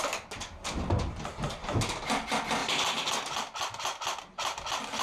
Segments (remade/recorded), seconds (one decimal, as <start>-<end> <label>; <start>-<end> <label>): 0.0-5.0 recorded